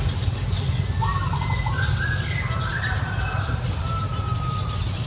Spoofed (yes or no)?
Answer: no